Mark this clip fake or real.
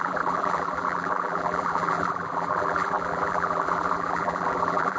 fake